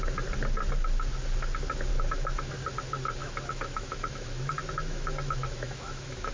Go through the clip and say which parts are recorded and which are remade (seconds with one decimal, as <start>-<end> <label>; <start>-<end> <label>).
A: 0.0-1.9 recorded; 1.9-2.5 remade; 2.5-3.2 recorded; 3.2-6.3 remade

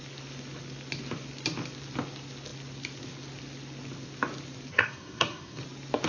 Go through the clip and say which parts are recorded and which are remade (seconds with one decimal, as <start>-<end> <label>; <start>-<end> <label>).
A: 0.0-4.7 recorded; 4.7-5.6 remade; 5.6-6.1 recorded

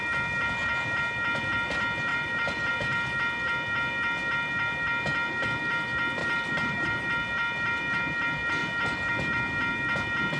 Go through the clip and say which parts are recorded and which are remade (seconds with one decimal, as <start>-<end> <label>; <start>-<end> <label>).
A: 0.0-2.1 recorded; 2.1-2.7 remade; 2.7-6.2 recorded; 6.2-7.1 remade; 7.1-10.4 recorded

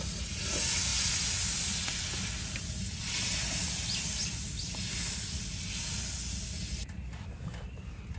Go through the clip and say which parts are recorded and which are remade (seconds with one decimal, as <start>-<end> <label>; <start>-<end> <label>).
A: 0.0-8.2 recorded

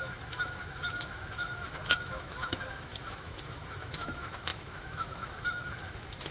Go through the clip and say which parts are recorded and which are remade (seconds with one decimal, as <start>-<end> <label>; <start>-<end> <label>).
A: 0.0-6.3 remade